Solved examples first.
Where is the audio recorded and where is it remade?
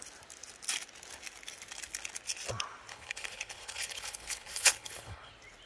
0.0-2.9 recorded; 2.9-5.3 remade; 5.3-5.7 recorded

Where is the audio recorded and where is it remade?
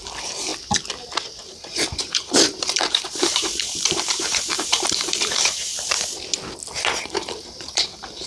0.0-0.5 remade; 0.5-1.4 recorded; 1.4-5.7 remade; 5.7-7.0 recorded; 7.0-8.3 remade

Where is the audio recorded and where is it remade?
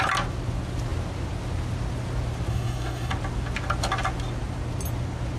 0.0-2.5 recorded; 2.5-3.1 remade; 3.1-5.4 recorded